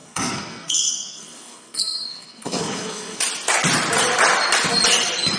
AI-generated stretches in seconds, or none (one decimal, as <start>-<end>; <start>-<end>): 0.0-3.2